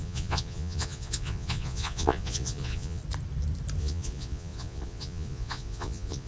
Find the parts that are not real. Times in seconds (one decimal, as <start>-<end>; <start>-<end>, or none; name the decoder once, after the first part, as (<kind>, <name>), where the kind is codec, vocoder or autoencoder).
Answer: 0.0-3.0 (vocoder, Vocos); 3.8-6.3